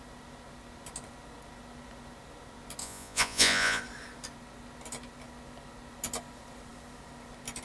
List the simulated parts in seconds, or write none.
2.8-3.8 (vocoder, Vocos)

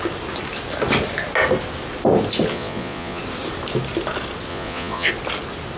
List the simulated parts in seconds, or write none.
2.5-3.2 (vocoder, Vocos); 4.5-5.1

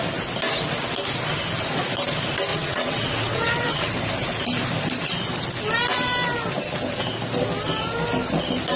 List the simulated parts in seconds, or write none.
2.5-4.0 (vocoder, WaveNeXt)

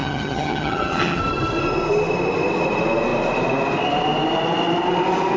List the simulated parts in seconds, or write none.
0.0-1.2 (vocoder, HiFi-GAN)

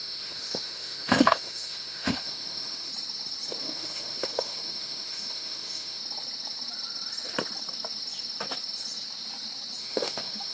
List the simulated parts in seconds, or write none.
0.0-2.9 (autoencoder, DAC-VAE); 3.6-6.0; 9.8-10.5

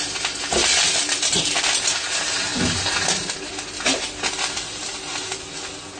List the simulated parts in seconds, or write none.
none